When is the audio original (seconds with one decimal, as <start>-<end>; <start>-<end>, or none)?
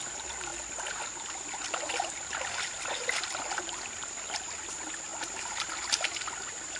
0.0-6.8